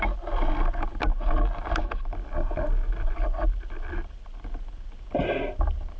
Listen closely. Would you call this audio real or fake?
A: real